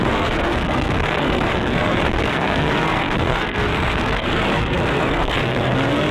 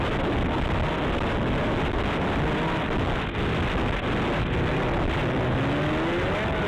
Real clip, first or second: second